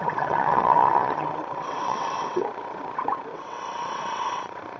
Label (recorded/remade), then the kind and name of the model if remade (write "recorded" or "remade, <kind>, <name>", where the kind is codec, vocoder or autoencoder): remade, vocoder, WaveNeXt